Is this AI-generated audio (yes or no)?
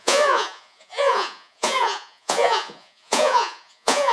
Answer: yes